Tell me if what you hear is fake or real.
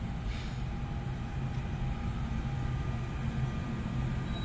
real